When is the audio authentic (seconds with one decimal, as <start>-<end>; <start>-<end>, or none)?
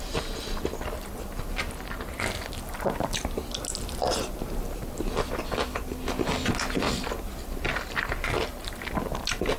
0.0-9.6